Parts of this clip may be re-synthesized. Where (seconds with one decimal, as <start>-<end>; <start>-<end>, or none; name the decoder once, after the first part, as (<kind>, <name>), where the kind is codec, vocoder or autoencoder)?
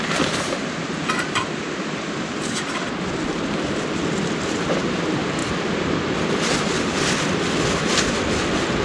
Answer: none